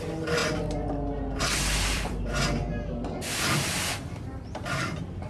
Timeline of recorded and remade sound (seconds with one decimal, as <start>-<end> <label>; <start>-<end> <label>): 0.0-0.4 remade; 0.4-1.4 recorded; 1.4-2.3 remade; 2.3-3.5 recorded; 3.5-5.3 remade